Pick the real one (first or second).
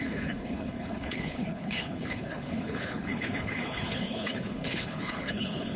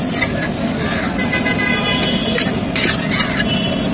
second